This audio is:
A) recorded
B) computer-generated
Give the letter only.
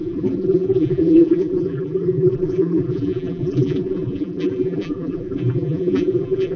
B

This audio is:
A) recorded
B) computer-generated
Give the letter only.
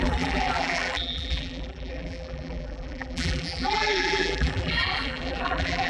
B